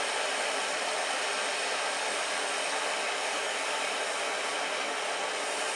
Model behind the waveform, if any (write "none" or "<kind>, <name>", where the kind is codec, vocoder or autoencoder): none